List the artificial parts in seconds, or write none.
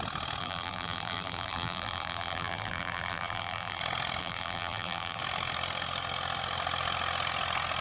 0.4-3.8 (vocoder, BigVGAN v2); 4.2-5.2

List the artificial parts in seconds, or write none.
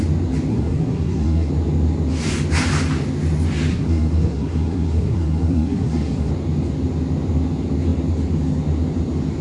0.5-1.5 (codec, SNAC); 3.7-6.3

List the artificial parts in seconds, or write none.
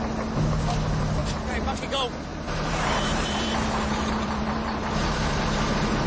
1.2-1.8 (vocoder, BigVGAN v2); 2.3-6.1